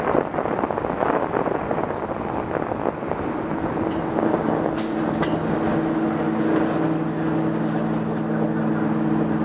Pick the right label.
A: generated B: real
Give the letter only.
B